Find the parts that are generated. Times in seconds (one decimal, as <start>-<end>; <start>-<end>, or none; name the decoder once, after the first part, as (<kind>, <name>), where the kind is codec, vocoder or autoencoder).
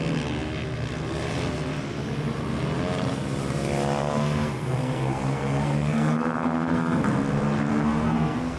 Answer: 4.0-7.0 (codec, SNAC); 7.7-8.6